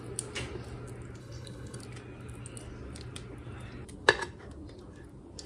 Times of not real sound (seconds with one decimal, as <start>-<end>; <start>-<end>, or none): 1.2-1.8